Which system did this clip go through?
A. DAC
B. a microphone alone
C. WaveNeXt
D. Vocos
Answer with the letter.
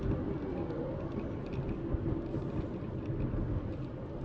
B